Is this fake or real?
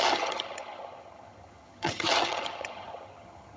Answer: fake